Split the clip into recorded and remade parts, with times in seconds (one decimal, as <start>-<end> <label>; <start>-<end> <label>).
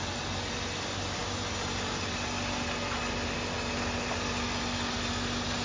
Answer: 0.0-5.6 recorded